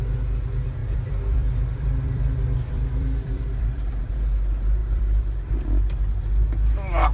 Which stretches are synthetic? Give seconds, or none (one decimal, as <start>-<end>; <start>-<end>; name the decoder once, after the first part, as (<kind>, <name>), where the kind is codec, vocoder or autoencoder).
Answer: 0.8-4.1 (vocoder, BigVGAN v2); 4.8-5.5